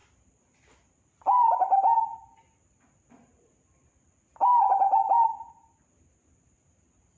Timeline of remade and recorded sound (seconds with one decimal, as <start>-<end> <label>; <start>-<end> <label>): 0.0-7.2 recorded